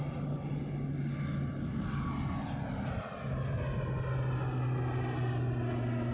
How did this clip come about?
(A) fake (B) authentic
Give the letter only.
B